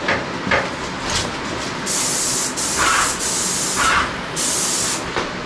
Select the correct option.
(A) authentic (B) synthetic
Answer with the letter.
A